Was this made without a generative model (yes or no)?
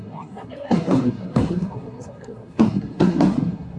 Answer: no